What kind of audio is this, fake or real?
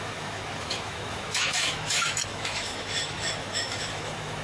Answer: fake